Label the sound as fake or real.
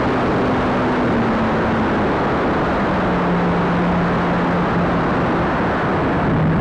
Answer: real